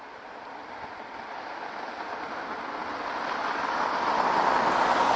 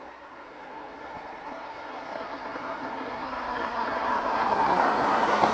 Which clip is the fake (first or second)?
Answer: second